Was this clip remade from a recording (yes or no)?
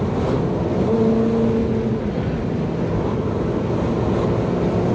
no